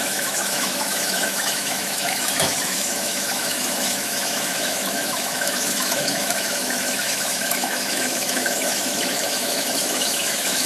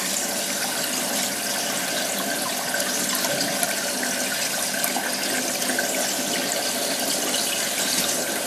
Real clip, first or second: second